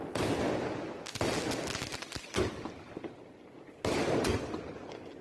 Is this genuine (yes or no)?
yes